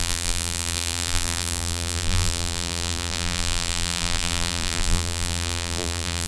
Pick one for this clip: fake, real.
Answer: fake